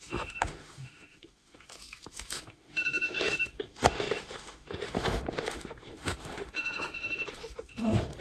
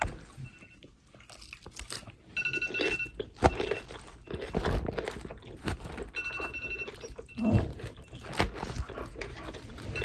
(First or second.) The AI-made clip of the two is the first